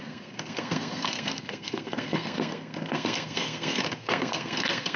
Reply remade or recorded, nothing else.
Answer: remade